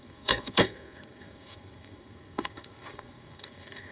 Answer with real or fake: fake